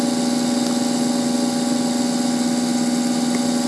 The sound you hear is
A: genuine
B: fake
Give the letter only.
A